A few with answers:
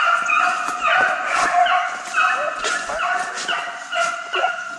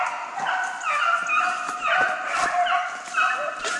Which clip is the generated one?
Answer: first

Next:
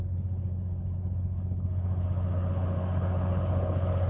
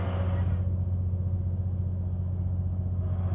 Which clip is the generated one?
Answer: first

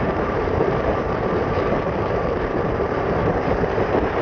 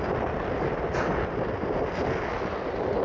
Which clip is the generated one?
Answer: first